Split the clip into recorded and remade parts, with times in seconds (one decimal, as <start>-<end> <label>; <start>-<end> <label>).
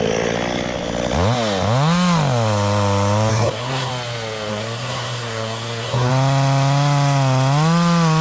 0.0-3.3 recorded; 3.3-3.9 remade; 3.9-4.5 recorded; 4.5-6.1 remade; 6.1-8.2 recorded